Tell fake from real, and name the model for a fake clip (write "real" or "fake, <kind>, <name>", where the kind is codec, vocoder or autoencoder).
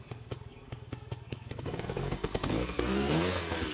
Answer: fake, codec, SNAC